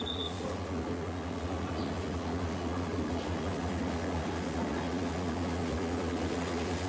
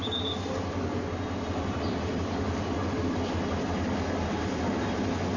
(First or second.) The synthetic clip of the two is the first